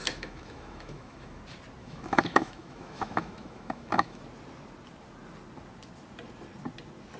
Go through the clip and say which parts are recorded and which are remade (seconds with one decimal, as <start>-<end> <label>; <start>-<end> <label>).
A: 0.0-1.4 remade; 1.4-1.8 recorded; 1.8-4.2 remade; 4.2-7.2 recorded